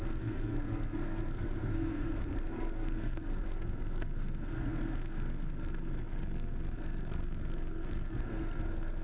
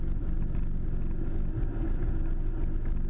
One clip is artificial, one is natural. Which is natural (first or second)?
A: second